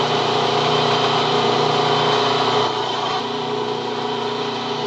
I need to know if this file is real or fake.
fake